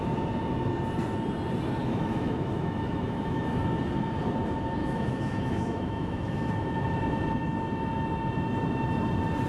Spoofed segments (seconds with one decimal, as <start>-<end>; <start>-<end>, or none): 1.8-3.4; 4.8-6.5